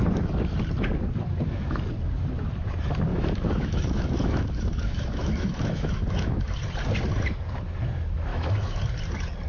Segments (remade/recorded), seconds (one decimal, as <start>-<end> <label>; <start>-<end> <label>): 0.0-3.1 recorded; 3.1-6.6 remade; 6.6-8.3 recorded; 8.3-8.8 remade; 8.8-9.5 recorded